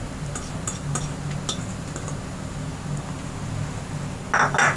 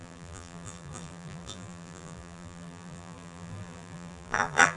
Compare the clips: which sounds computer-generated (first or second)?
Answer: second